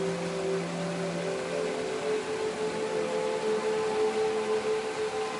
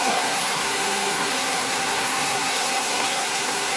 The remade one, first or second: second